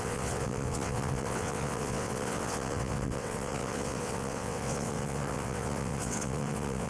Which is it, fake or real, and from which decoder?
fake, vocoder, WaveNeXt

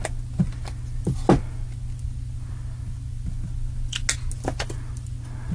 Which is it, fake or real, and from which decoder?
real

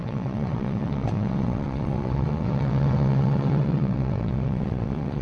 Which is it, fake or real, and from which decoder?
fake, vocoder, WaveNeXt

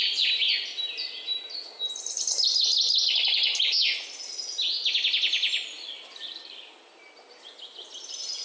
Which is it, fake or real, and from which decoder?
real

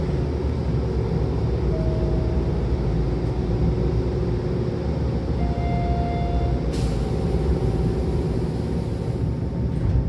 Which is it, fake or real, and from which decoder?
real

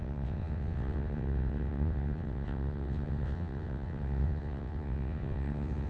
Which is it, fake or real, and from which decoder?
fake, vocoder, WaveNeXt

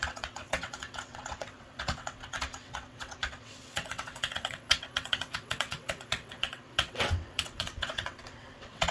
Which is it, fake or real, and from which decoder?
fake, vocoder, WaveNeXt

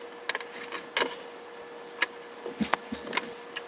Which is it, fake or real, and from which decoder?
real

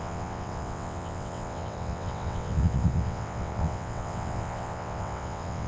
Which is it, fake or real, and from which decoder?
fake, vocoder, WaveNeXt